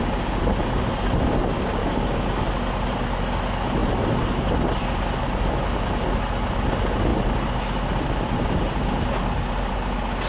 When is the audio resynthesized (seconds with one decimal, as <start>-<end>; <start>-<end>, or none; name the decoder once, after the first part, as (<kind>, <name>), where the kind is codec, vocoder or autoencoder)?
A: 1.8-2.4 (codec, DAC)

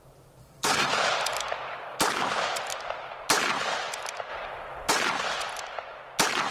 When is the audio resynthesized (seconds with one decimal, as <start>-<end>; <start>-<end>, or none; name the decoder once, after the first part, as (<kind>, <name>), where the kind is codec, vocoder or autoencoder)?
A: 0.4-0.9 (codec, SNAC)

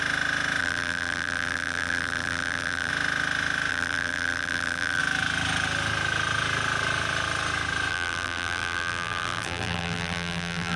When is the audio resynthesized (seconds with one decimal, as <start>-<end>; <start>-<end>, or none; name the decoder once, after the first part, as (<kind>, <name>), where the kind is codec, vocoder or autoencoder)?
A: 0.6-2.9 (vocoder, BigVGAN v2); 3.7-5.0; 7.9-10.8

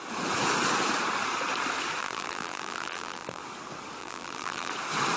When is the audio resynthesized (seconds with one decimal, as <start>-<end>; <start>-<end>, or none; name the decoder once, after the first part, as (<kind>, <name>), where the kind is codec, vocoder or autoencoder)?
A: 2.0-3.4 (vocoder, BigVGAN v2); 4.0-4.7

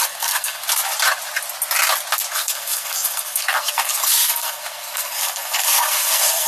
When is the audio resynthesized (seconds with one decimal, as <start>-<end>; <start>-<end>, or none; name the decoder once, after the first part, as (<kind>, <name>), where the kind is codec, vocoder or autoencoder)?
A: 0.0-0.6 (codec, SNAC); 2.3-6.5

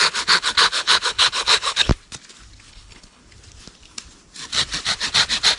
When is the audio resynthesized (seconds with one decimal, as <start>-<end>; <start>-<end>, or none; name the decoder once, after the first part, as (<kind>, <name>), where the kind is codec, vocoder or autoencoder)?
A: 0.0-1.9 (codec, HILCodec); 2.7-3.2